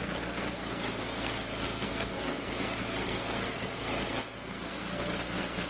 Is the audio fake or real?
fake